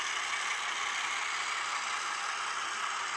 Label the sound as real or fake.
real